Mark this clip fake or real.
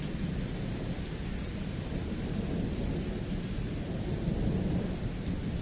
real